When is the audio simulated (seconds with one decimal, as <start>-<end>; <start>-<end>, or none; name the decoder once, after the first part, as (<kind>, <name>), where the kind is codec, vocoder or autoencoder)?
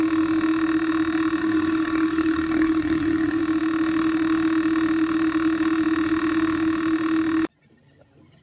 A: 1.4-3.4 (codec, SNAC)